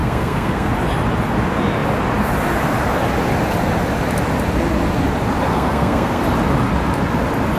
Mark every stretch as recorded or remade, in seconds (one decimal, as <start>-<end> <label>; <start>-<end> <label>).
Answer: 0.0-0.7 remade; 0.7-5.5 recorded; 5.5-6.2 remade; 6.2-7.6 recorded